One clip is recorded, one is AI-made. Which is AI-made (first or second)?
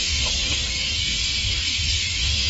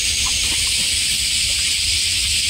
first